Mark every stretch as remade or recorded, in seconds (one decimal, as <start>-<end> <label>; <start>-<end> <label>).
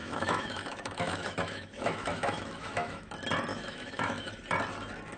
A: 0.0-3.1 remade; 3.1-3.5 recorded; 3.5-4.3 remade; 4.3-5.2 recorded